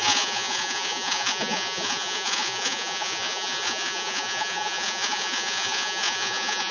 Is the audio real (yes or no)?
no